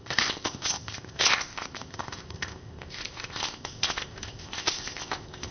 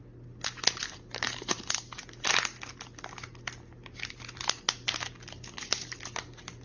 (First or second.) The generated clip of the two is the first